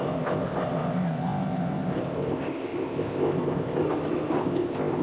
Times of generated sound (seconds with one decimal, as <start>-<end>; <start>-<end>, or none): 0.0-3.8; 4.4-5.0